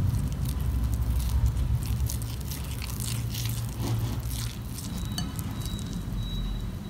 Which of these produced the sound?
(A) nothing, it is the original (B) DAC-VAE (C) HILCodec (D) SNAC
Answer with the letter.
A